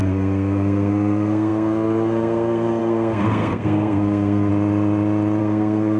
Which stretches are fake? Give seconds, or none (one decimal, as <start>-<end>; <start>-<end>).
0.0-4.5; 5.4-6.0